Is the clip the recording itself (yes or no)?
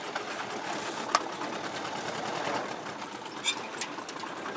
yes